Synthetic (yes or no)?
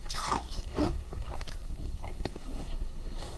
yes